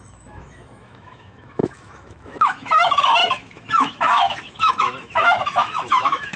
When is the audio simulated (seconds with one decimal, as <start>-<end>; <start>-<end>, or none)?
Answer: 0.0-6.4